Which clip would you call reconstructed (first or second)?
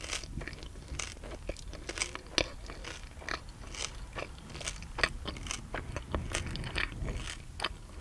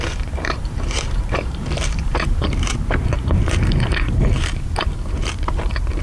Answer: second